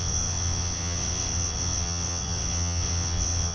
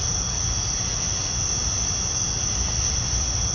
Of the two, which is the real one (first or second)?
second